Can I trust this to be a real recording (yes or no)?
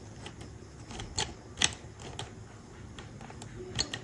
yes